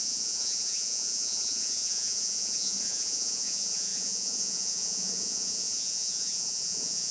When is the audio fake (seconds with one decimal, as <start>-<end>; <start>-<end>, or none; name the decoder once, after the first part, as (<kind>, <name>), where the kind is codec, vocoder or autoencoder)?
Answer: 0.0-7.1 (vocoder, Vocos)